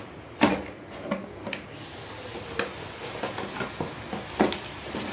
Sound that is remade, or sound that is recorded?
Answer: recorded